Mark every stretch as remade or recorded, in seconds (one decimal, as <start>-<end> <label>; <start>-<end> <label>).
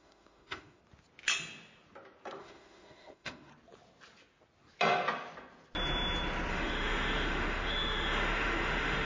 0.0-0.8 remade; 0.8-2.4 recorded; 2.4-3.5 remade; 3.5-6.5 recorded; 6.5-9.0 remade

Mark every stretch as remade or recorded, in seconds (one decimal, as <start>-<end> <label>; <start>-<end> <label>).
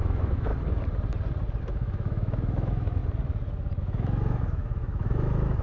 0.0-0.5 remade; 0.5-1.6 recorded; 1.6-3.0 remade; 3.0-3.8 recorded; 3.8-5.6 remade